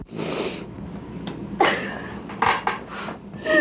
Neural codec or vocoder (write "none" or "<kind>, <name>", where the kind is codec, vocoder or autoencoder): none